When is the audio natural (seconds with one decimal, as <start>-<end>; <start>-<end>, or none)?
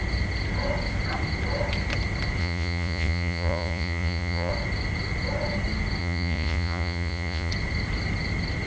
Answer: 0.0-2.4; 4.5-6.0; 7.5-8.7